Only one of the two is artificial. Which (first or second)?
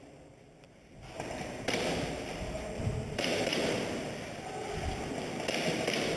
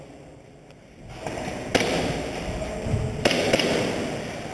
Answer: first